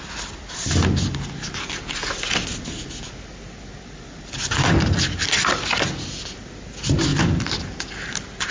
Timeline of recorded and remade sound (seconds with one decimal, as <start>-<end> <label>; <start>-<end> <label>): 0.0-7.1 recorded; 7.1-7.7 remade; 7.7-8.5 recorded